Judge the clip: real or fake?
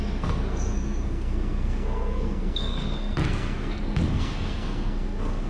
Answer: fake